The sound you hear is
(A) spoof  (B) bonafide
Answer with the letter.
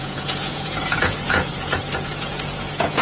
A